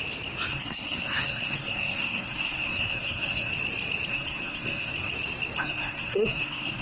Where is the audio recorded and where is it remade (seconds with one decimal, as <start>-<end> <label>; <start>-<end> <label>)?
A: 0.0-0.5 recorded; 0.5-3.5 remade; 3.5-4.1 recorded; 4.1-4.9 remade; 4.9-5.6 recorded; 5.6-6.8 remade